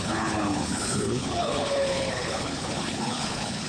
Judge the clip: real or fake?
fake